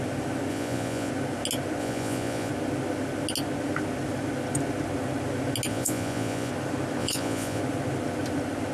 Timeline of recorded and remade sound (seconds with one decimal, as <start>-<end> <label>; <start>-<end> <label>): 0.0-0.5 recorded; 0.5-1.1 remade; 1.1-1.8 recorded; 1.8-2.5 remade; 2.5-5.7 recorded; 5.7-6.5 remade; 6.5-7.0 recorded; 7.0-7.6 remade; 7.6-8.7 recorded